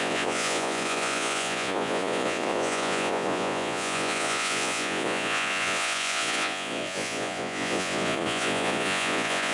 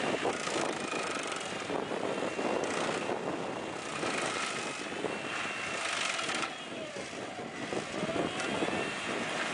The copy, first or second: first